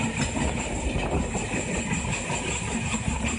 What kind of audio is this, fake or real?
real